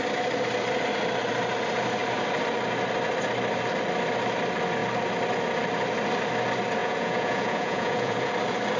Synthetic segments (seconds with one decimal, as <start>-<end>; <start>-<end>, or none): 6.8-8.3